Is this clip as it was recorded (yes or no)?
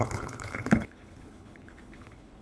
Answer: no